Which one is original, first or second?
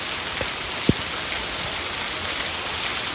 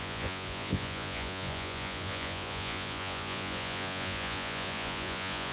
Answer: first